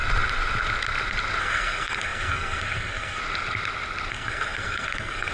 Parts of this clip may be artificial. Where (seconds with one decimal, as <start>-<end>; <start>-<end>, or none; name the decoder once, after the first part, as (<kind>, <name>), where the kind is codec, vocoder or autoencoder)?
1.4-3.2 (codec, SNAC); 4.1-5.3